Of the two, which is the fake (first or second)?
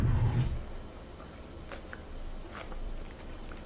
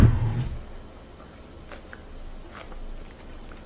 first